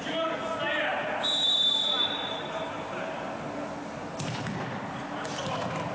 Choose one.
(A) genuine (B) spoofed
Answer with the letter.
A